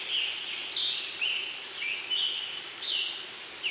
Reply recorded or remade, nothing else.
recorded